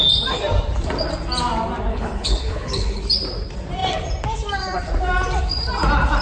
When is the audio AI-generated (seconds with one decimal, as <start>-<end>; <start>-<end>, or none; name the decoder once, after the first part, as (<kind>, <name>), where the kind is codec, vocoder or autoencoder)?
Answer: 1.9-3.0 (codec, HILCodec)